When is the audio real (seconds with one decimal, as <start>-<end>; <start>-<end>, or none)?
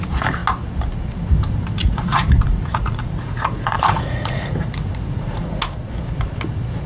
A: 0.0-1.8; 5.6-6.9